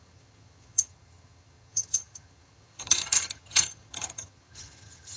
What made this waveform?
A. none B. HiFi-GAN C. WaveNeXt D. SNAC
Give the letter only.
B